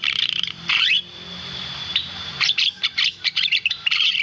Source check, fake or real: fake